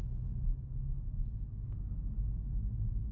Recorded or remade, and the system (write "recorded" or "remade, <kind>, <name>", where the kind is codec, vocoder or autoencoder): recorded